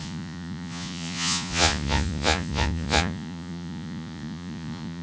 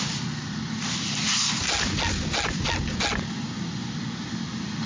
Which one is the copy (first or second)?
first